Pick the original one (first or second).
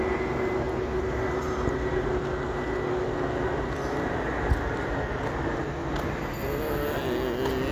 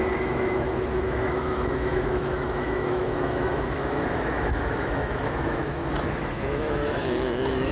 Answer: first